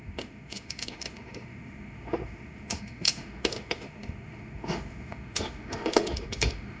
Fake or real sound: fake